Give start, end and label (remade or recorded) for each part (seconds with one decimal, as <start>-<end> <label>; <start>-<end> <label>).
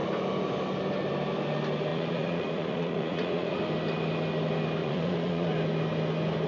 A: 0.0-1.9 recorded; 1.9-3.6 remade; 3.6-4.8 recorded; 4.8-5.5 remade; 5.5-6.5 recorded